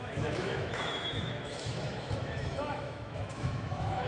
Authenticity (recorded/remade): remade